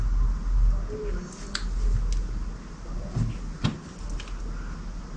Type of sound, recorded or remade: recorded